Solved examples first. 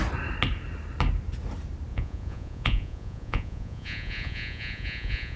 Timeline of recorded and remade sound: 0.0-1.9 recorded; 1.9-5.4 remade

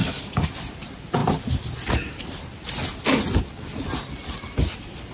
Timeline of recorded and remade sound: 0.0-0.5 remade; 0.5-5.1 recorded

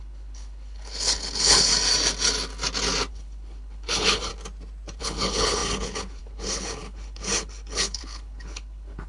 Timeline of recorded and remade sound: 0.0-1.7 remade; 1.7-3.1 recorded; 3.1-4.3 remade; 4.3-5.0 recorded; 5.0-9.1 remade

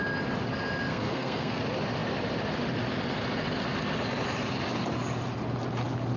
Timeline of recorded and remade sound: 0.0-0.9 recorded; 0.9-1.6 remade; 1.6-6.2 recorded